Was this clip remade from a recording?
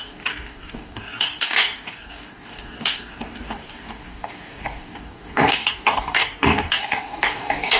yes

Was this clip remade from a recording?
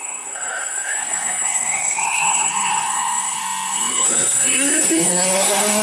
yes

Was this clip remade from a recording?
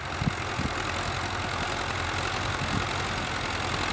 no